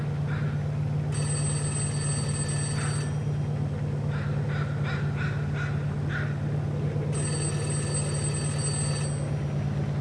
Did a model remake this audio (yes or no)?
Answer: no